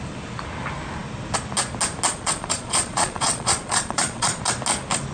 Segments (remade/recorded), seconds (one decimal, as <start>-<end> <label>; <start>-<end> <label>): 0.0-2.1 recorded; 2.1-4.4 remade; 4.4-5.1 recorded